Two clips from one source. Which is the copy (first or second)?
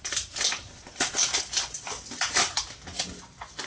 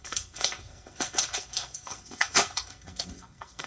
second